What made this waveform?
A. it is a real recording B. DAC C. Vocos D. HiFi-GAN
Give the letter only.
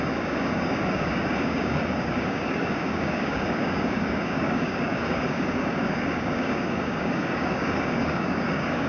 B